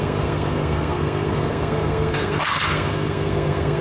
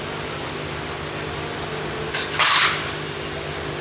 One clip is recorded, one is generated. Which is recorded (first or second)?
second